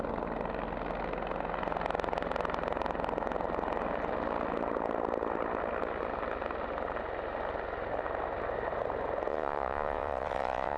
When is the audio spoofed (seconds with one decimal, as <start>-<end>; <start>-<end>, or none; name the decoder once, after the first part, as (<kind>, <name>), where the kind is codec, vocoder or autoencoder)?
9.3-10.8 (vocoder, WaveNeXt)